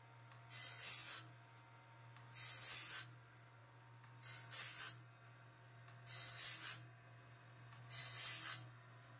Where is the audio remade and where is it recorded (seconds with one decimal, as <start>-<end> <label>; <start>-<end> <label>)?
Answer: 0.0-9.2 recorded